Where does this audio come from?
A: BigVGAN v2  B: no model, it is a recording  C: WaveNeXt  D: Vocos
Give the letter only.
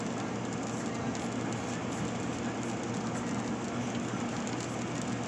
B